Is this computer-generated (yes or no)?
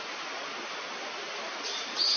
no